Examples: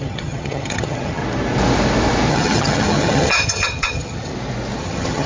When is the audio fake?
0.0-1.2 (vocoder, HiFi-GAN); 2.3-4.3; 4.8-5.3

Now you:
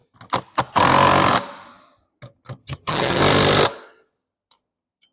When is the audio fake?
2.6-3.2 (vocoder, HiFi-GAN)

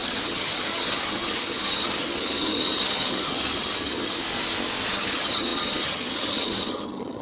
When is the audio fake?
0.0-4.2 (vocoder, HiFi-GAN); 4.9-7.2

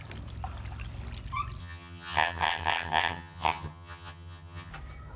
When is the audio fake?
1.6-4.7 (vocoder, HiFi-GAN)

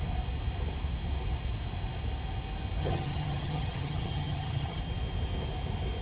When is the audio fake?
2.8-4.8 (vocoder, HiFi-GAN)

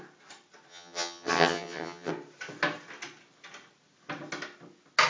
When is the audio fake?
0.7-2.1 (vocoder, HiFi-GAN)

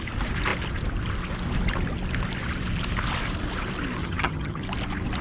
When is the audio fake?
4.0-4.6 (vocoder, HiFi-GAN)